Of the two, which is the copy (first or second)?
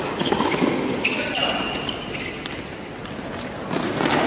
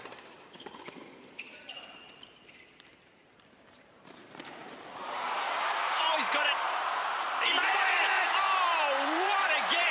second